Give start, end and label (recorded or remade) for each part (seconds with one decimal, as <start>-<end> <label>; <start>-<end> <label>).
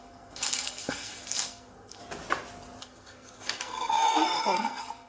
0.0-2.0 remade; 2.0-2.8 recorded; 2.8-5.1 remade